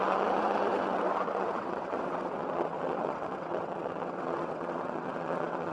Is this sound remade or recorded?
remade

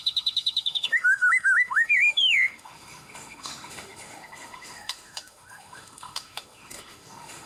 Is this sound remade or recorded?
remade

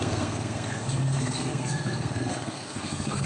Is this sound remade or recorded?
remade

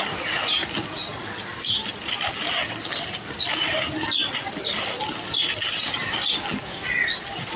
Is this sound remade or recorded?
recorded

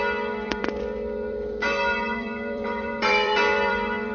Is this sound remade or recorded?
remade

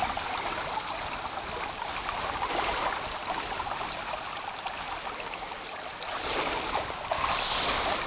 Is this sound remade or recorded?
recorded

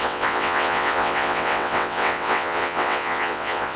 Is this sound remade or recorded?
remade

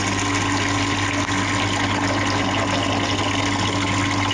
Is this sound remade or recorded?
recorded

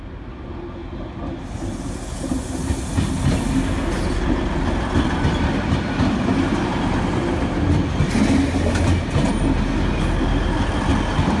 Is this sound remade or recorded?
recorded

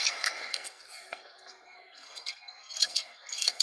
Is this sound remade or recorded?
remade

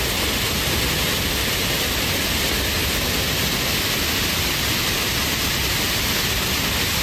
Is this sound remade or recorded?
recorded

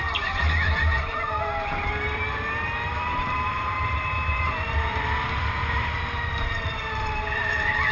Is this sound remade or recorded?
remade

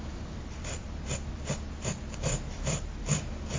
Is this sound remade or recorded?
remade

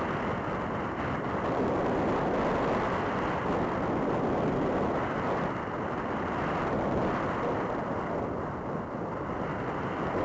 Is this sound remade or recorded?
recorded